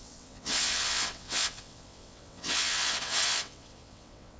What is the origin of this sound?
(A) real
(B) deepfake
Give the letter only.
B